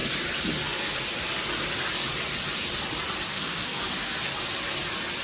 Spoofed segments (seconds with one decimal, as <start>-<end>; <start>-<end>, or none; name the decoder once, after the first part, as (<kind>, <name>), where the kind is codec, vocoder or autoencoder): 3.3-4.2 (codec, SNAC)